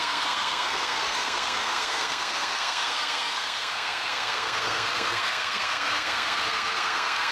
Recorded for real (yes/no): no